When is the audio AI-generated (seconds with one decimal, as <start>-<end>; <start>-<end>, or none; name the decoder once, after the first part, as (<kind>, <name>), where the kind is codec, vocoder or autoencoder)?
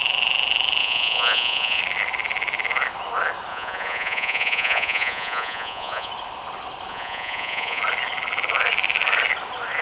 0.8-1.8 (vocoder, Vocos); 3.5-6.1; 6.9-7.8